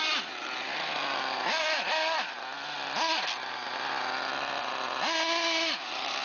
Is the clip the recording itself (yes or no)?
yes